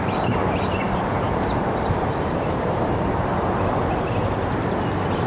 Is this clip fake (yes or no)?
yes